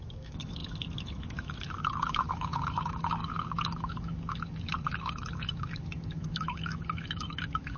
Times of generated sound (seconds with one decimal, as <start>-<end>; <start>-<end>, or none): 0.0-7.8